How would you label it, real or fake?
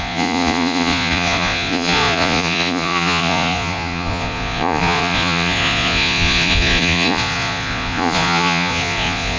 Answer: fake